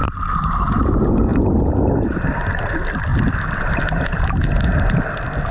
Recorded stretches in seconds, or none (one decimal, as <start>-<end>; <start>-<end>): 0.0-1.3; 2.5-3.1; 4.2-5.5